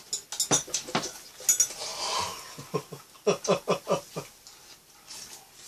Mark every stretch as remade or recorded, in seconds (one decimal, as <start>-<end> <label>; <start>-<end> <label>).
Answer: 0.0-5.7 recorded